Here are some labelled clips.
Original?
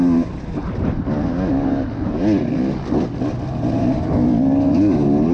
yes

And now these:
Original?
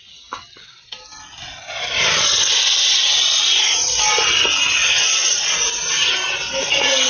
yes